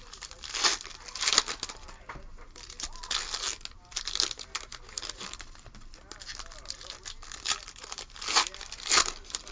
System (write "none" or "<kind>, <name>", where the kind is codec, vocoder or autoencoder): none